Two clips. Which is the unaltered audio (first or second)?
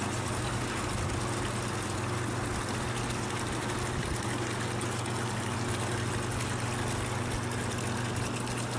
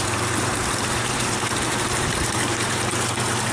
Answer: first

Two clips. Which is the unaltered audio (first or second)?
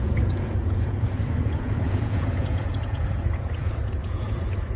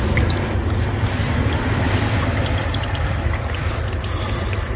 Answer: second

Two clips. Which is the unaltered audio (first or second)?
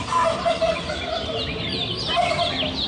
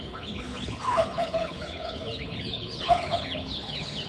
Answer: first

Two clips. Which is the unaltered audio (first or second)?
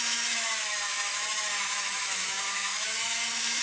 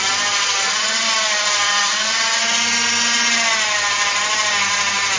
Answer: second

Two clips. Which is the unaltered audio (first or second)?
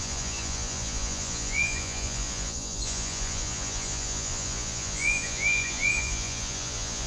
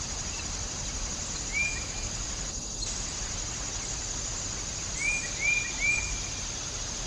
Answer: second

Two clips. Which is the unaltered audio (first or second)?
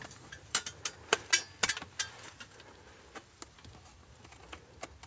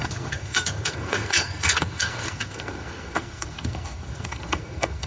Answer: first